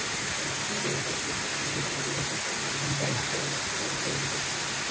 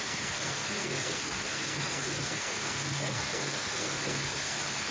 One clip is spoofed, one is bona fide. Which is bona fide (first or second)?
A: first